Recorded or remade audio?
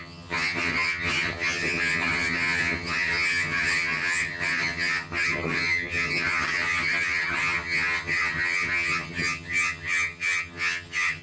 remade